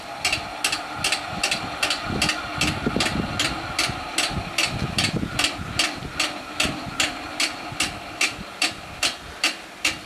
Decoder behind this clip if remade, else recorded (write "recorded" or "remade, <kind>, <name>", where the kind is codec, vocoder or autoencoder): recorded